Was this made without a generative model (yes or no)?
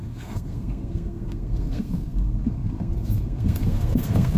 no